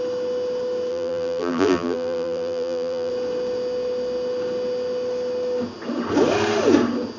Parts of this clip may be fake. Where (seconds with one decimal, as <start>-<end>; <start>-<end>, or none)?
0.9-3.1